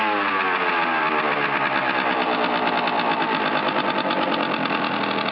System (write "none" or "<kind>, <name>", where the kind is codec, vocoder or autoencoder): none